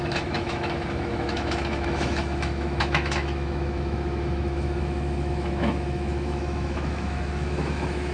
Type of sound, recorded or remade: remade